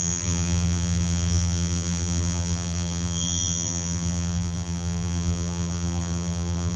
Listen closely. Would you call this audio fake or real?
fake